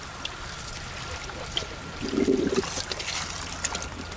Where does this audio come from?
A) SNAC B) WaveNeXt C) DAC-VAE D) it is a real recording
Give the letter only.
D